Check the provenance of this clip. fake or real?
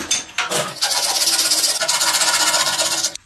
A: fake